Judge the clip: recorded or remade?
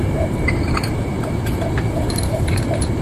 remade